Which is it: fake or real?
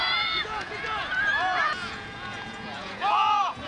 fake